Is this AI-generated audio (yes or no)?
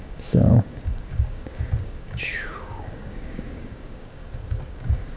yes